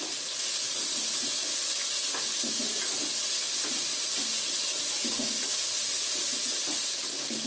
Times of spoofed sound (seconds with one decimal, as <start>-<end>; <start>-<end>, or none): none